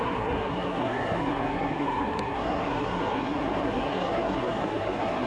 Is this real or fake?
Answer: fake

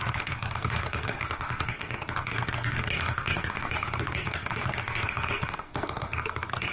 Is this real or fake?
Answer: fake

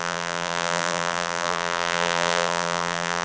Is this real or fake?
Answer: fake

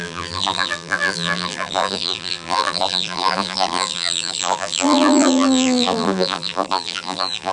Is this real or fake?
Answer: fake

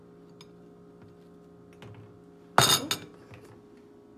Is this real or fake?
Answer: real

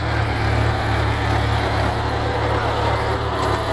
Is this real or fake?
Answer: real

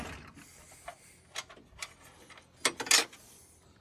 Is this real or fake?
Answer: real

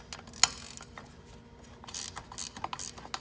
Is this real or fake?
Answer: real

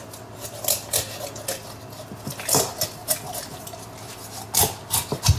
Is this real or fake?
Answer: real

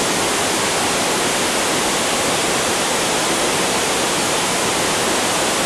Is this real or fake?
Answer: real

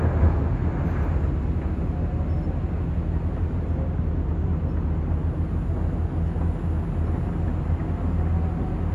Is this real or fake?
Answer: real